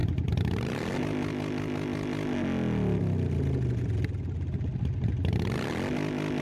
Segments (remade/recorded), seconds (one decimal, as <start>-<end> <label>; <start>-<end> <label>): 0.0-6.4 recorded